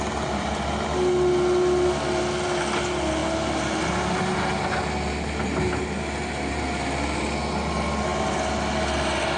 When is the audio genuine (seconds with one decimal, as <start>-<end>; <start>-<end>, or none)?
0.0-9.4